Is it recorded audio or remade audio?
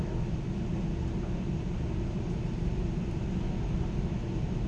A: recorded